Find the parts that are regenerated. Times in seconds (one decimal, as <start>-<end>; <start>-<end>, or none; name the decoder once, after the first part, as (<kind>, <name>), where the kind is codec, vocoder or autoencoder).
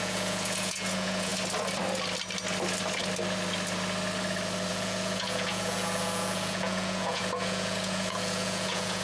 0.0-1.3 (vocoder, Vocos); 4.7-9.0